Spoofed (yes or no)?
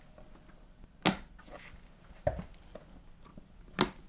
no